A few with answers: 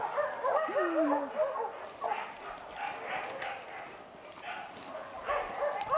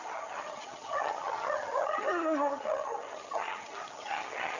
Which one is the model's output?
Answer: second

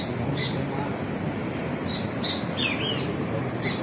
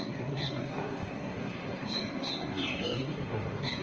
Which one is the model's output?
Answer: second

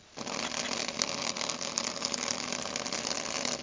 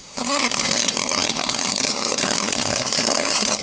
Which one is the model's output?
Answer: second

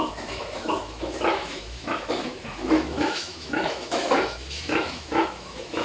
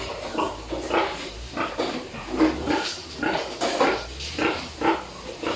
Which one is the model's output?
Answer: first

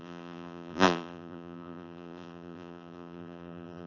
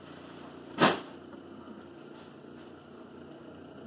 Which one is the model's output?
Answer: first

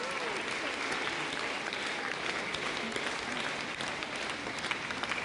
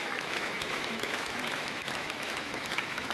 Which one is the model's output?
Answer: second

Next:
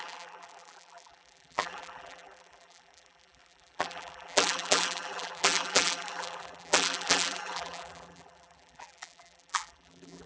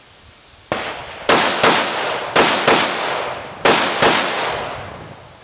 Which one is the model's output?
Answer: first